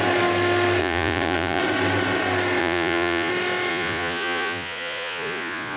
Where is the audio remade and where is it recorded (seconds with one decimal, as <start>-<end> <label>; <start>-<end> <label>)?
0.0-0.8 recorded; 0.8-1.6 remade; 1.6-2.6 recorded; 2.6-3.3 remade; 3.3-3.7 recorded; 3.7-5.8 remade